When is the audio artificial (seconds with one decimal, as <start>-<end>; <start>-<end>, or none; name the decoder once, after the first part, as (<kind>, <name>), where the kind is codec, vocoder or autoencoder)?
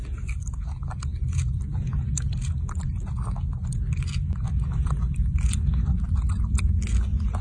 none